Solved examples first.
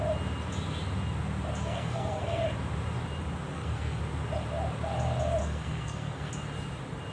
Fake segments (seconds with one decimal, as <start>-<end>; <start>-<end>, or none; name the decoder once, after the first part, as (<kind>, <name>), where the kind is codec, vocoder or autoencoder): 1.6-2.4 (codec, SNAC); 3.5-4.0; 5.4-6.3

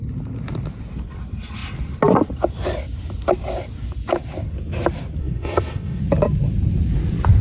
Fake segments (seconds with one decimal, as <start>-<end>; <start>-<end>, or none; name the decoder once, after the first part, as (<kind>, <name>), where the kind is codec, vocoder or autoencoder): 5.2-6.0 (codec, SNAC)

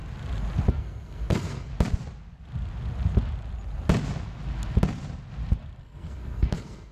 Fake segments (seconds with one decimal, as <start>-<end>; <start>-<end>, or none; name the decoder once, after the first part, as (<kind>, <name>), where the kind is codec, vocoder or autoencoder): 0.7-1.7 (codec, SNAC); 5.8-6.9

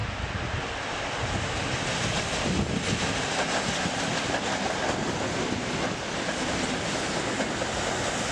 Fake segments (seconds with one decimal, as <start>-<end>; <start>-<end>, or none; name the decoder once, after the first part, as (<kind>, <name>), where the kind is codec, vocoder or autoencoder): none

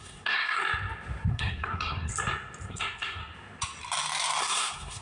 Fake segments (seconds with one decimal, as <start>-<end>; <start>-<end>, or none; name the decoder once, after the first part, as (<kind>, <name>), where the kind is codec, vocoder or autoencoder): 0.0-0.6 (codec, SNAC); 1.3-2.1; 2.7-3.2; 4.4-5.0

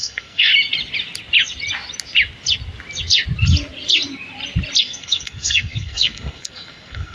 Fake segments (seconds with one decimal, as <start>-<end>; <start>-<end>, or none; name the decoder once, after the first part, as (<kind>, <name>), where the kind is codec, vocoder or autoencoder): 0.0-0.5 (codec, SNAC); 4.8-7.1

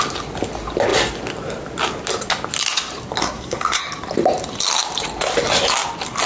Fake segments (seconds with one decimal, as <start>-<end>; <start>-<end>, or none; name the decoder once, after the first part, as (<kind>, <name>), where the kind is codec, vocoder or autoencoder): 3.2-3.8 (codec, SNAC)

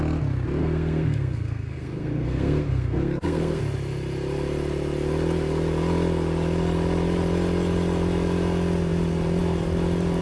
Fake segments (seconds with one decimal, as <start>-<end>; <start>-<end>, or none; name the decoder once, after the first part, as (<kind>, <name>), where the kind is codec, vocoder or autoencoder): 0.6-3.6 (codec, SNAC)